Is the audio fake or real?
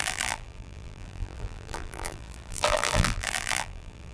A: fake